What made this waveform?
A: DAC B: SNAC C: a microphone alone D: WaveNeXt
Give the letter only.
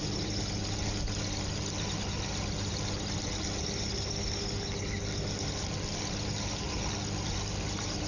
C